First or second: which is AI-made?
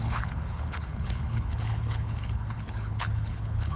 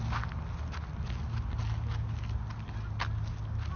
first